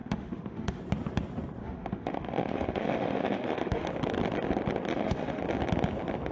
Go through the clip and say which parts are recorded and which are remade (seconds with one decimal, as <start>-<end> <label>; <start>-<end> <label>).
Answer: 0.0-0.8 remade; 0.8-1.6 recorded; 1.6-3.9 remade; 3.9-4.9 recorded; 4.9-5.4 remade; 5.4-6.3 recorded